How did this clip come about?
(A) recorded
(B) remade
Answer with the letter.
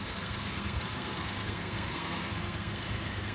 B